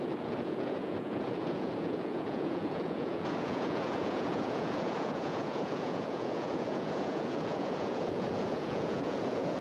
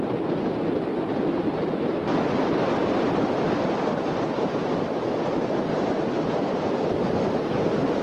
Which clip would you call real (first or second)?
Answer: second